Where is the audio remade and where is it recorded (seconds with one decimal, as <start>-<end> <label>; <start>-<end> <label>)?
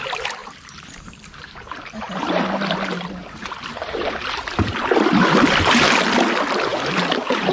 0.0-0.4 recorded; 0.4-2.5 remade; 2.5-3.2 recorded; 3.2-4.7 remade; 4.7-6.7 recorded; 6.7-7.5 remade